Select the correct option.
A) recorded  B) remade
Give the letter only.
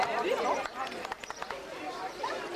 B